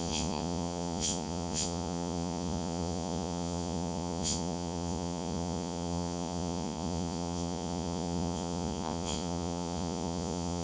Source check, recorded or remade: remade